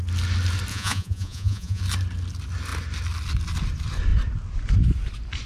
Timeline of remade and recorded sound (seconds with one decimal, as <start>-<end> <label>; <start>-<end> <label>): 0.0-0.7 recorded; 0.7-1.8 remade; 1.8-5.5 recorded